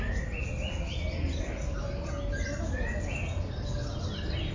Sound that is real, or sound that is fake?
real